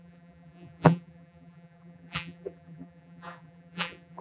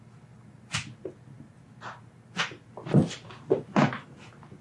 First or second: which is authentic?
second